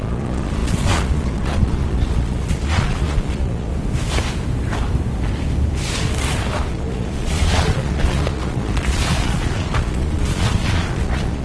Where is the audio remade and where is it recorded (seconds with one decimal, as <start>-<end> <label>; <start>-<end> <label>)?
0.0-3.7 remade; 3.7-6.7 recorded; 6.7-11.4 remade